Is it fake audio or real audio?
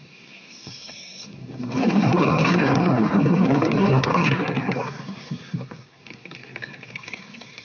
fake